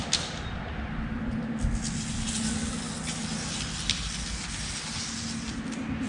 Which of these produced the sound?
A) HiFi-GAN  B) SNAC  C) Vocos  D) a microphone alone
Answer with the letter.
D